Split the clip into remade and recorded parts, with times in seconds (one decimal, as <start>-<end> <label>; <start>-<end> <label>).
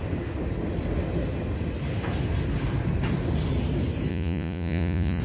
0.0-4.1 recorded; 4.1-5.2 remade